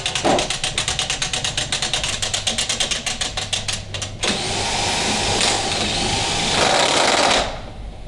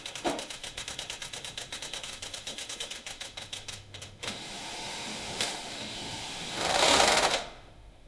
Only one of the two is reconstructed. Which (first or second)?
second